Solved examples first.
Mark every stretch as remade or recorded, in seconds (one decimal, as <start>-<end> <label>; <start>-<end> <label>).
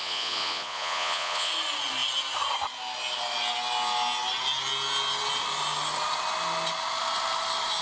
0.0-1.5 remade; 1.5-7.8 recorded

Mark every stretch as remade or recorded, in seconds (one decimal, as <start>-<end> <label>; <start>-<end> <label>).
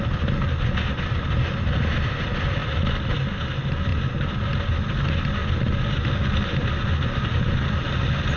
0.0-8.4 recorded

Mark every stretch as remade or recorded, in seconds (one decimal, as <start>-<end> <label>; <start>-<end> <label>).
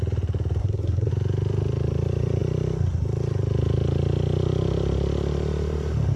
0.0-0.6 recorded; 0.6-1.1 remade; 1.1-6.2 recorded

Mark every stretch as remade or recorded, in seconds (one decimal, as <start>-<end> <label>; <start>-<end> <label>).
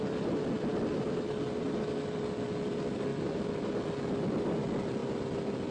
0.0-5.7 recorded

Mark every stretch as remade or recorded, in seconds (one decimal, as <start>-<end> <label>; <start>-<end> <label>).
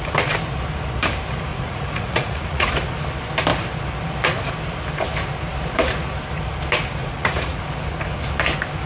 0.0-1.5 recorded; 1.5-2.7 remade; 2.7-7.0 recorded; 7.0-7.6 remade; 7.6-8.9 recorded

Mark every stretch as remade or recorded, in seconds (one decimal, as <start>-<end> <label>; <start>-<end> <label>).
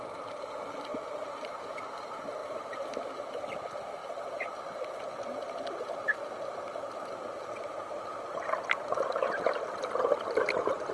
0.0-0.9 recorded; 0.9-1.6 remade; 1.6-4.0 recorded; 4.0-7.0 remade; 7.0-10.9 recorded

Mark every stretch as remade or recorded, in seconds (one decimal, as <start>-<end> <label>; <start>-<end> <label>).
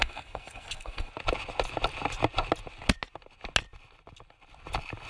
0.0-1.1 remade; 1.1-5.1 recorded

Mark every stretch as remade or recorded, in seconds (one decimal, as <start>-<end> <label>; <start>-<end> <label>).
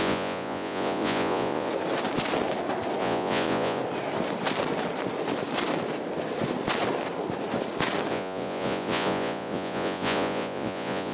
0.0-1.7 remade; 1.7-3.0 recorded; 3.0-3.8 remade; 3.8-8.1 recorded; 8.1-11.1 remade